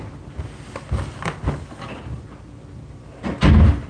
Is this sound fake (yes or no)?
no